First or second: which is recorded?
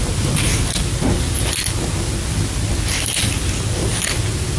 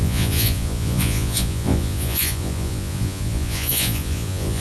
first